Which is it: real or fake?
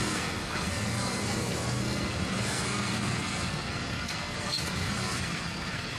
fake